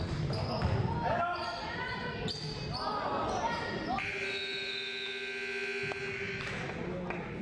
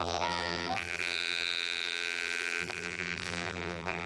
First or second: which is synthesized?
second